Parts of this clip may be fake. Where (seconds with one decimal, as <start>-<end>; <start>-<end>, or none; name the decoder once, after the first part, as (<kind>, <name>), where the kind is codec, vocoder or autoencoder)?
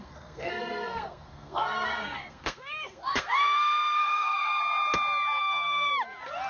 0.0-4.6 (codec, SNAC); 5.4-5.9